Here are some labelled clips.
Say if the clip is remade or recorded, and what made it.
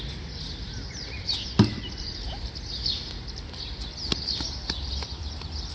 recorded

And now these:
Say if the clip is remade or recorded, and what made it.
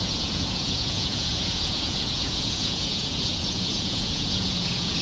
remade, vocoder, Vocos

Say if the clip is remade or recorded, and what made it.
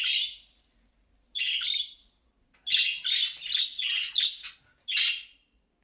recorded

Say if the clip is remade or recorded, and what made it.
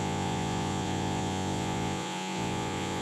remade, vocoder, Vocos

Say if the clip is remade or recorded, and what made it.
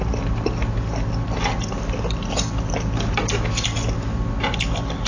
recorded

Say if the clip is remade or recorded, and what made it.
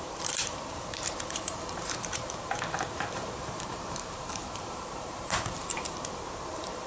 remade, vocoder, BigVGAN v2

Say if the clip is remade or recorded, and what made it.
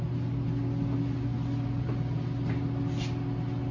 recorded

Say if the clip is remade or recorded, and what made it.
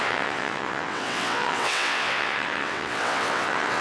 remade, vocoder, WaveNeXt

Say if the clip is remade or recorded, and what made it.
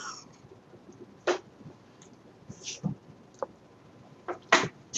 recorded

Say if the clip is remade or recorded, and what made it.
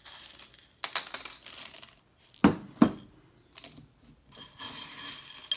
recorded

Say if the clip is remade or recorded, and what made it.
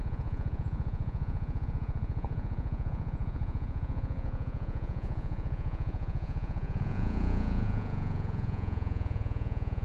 remade, vocoder, Vocos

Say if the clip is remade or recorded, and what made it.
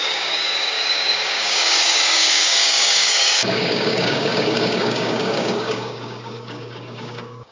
remade, codec, DAC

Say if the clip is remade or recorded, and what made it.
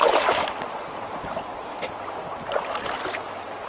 recorded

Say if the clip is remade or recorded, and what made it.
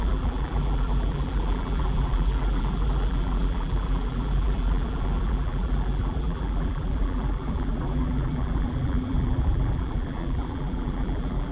remade, vocoder, BigVGAN v2